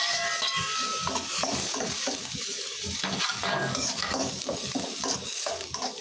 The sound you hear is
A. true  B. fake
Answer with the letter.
B